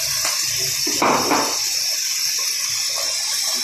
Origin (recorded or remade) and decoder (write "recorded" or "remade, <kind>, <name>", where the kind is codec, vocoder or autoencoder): recorded